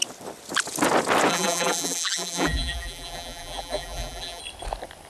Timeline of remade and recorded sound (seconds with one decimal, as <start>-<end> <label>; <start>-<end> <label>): 0.0-1.3 recorded; 1.3-4.4 remade; 4.4-5.1 recorded